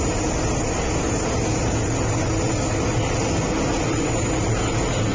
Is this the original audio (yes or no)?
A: yes